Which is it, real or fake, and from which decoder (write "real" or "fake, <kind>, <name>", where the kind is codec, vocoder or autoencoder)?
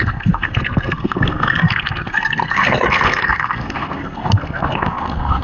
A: fake, codec, SNAC